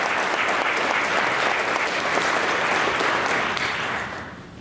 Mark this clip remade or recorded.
recorded